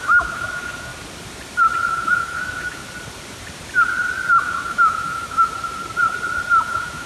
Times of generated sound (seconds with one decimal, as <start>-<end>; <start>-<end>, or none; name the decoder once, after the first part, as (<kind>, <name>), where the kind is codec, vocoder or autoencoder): 0.0-0.9 (autoencoder, DAC-VAE); 1.9-2.8; 4.4-5.5; 6.6-7.1